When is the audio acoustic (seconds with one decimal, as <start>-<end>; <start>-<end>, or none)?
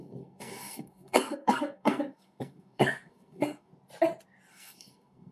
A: 3.7-4.5